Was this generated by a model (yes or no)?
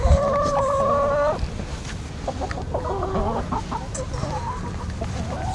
no